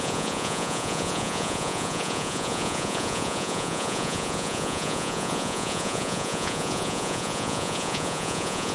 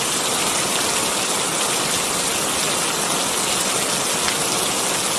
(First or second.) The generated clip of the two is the first